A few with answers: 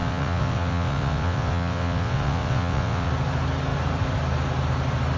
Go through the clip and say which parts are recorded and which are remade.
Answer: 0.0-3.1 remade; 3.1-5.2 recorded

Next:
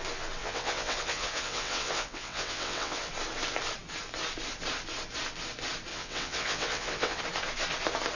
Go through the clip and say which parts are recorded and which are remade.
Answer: 0.0-0.4 recorded; 0.4-3.1 remade; 3.1-5.9 recorded; 5.9-7.2 remade; 7.2-8.2 recorded

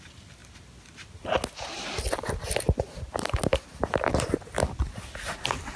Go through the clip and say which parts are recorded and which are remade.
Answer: 0.0-5.8 recorded

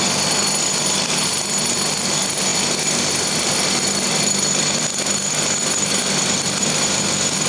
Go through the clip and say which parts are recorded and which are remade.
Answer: 0.0-7.5 recorded